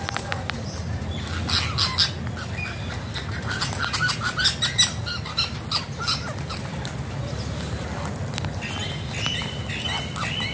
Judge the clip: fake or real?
real